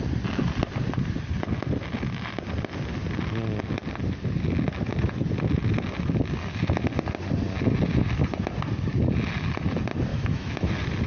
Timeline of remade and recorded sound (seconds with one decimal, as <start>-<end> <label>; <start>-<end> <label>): 0.0-10.1 recorded; 10.1-10.7 remade; 10.7-11.1 recorded